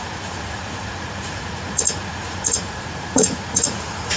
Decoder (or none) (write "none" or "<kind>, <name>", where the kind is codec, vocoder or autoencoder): vocoder, Vocos